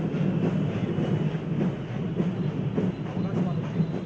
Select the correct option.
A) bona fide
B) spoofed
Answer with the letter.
A